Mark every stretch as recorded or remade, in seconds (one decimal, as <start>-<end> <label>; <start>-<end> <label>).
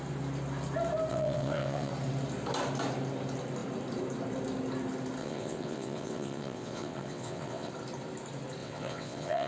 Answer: 0.0-1.1 recorded; 1.1-1.9 remade; 1.9-5.2 recorded; 5.2-7.7 remade; 7.7-8.6 recorded; 8.6-9.5 remade